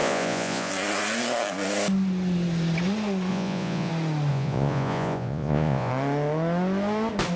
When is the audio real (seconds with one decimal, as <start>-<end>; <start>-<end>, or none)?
0.7-3.3; 3.9-4.3; 5.9-7.4